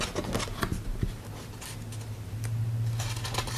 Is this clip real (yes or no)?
yes